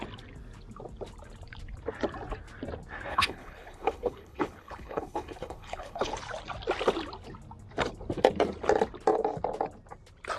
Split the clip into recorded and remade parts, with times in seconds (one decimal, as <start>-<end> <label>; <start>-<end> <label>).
0.0-3.1 recorded; 3.1-6.1 remade; 6.1-10.4 recorded